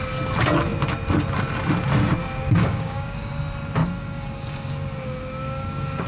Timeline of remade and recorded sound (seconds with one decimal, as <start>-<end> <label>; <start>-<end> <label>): 0.0-2.2 recorded; 2.2-3.3 remade; 3.3-3.8 recorded; 3.8-6.1 remade